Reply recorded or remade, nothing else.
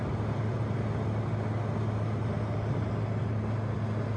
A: recorded